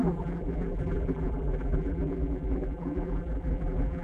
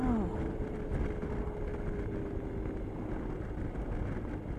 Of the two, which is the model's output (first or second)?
first